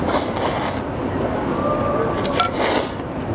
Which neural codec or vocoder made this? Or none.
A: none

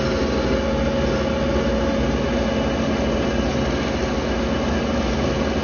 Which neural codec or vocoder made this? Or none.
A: none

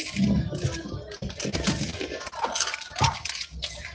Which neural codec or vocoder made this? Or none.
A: none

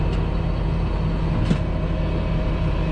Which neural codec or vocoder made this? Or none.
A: none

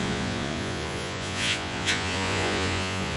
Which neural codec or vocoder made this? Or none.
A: vocoder, Vocos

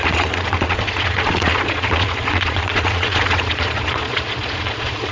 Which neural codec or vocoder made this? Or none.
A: vocoder, Vocos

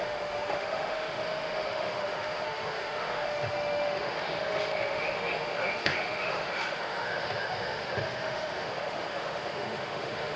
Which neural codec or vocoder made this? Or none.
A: autoencoder, DAC-VAE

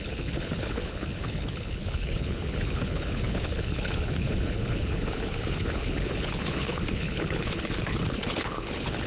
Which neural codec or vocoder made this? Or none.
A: codec, HILCodec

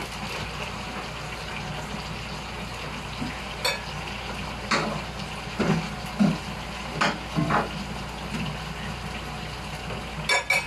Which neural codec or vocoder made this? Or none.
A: none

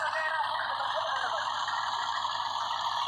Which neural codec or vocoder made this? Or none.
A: none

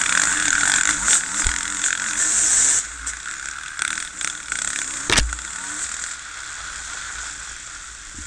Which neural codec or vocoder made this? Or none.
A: none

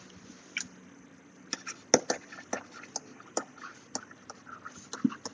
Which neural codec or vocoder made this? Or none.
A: none